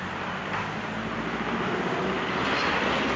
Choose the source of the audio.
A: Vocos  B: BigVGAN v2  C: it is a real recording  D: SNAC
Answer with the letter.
C